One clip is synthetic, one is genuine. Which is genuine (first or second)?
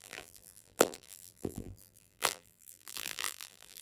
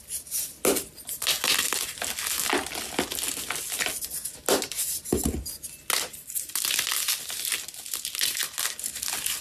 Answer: second